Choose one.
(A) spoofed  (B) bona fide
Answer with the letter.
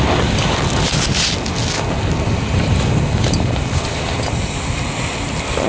B